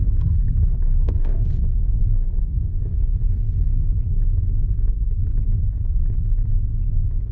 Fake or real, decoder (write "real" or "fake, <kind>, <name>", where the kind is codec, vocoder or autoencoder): fake, codec, SNAC